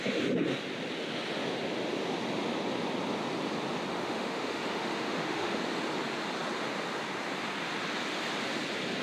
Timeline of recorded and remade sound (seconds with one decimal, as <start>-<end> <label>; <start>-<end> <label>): 0.0-3.9 recorded; 3.9-5.6 remade; 5.6-9.0 recorded